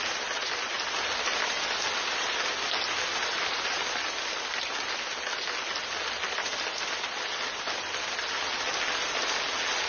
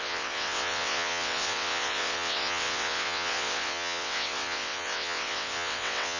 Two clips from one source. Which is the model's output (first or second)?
second